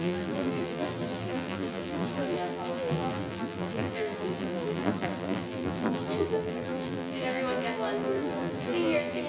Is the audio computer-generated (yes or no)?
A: yes